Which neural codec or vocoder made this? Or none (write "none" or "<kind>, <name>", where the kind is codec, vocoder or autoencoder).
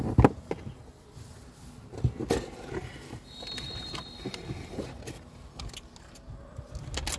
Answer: none